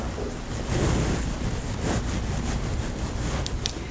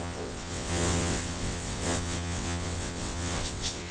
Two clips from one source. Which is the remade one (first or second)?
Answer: second